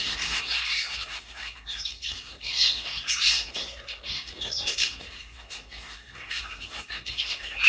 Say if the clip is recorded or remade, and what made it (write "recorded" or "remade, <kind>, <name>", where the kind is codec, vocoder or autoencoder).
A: remade, codec, SNAC